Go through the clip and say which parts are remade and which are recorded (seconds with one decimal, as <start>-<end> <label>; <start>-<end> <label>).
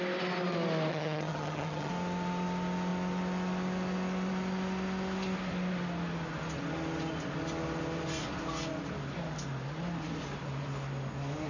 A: 0.0-0.9 recorded; 0.9-1.9 remade; 1.9-11.5 recorded